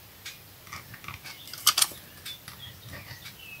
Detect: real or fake real